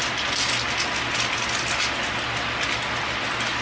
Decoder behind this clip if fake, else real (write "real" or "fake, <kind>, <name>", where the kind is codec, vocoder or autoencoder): real